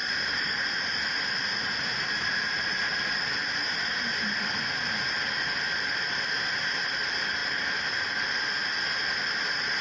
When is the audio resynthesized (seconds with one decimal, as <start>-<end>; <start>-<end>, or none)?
0.0-0.5